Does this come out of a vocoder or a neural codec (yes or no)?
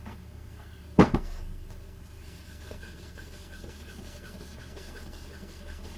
yes